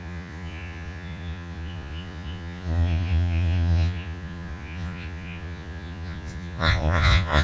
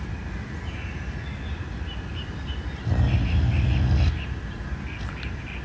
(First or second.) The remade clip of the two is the first